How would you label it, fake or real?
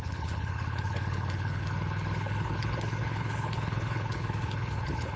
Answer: fake